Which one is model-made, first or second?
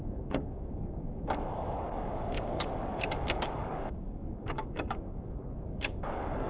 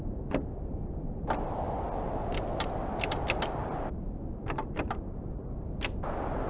first